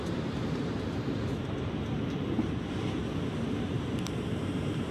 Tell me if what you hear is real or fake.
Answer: real